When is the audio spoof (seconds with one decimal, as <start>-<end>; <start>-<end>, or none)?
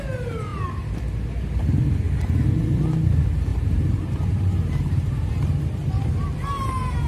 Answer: 3.5-5.3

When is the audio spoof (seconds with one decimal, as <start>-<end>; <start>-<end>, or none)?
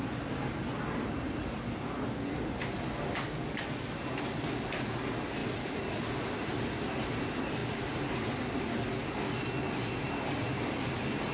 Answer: 5.4-6.5; 7.6-9.5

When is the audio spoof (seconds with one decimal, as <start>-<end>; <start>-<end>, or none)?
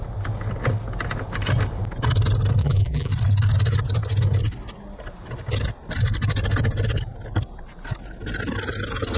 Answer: 2.6-3.1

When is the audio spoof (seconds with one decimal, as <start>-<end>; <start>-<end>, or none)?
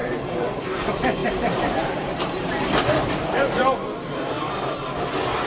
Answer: 0.0-3.6